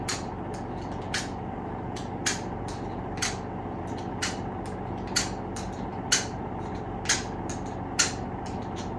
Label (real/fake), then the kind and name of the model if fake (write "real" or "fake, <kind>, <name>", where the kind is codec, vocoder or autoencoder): real